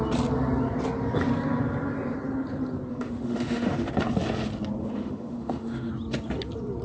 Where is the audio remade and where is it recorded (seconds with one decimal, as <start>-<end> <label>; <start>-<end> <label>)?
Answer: 0.0-2.9 recorded; 2.9-3.9 remade; 3.9-4.8 recorded; 4.8-5.9 remade; 5.9-6.8 recorded

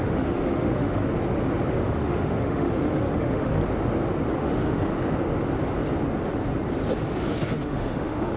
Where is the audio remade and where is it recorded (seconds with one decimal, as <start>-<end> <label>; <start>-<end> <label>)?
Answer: 0.0-1.0 remade; 1.0-1.7 recorded; 1.7-3.6 remade; 3.6-4.3 recorded; 4.3-4.9 remade; 4.9-7.2 recorded; 7.2-8.4 remade